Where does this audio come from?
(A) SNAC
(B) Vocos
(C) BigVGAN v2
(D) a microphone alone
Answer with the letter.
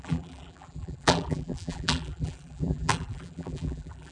C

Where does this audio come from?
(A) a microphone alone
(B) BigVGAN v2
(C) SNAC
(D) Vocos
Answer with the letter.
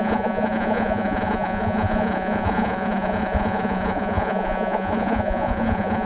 D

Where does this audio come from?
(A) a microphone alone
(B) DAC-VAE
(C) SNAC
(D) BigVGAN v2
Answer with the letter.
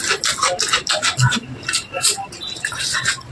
A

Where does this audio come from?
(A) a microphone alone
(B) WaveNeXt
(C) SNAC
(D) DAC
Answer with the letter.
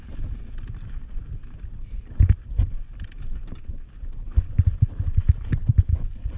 A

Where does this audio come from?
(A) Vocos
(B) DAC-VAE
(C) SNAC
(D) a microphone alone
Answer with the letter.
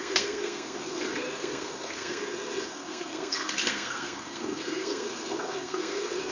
C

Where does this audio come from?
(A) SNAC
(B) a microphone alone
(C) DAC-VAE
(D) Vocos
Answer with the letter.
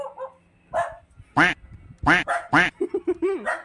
B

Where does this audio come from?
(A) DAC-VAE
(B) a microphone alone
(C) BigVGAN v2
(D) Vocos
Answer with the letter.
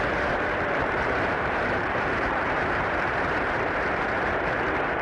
C